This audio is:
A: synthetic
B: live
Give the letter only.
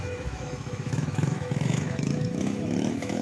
A